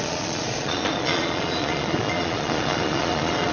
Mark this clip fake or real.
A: fake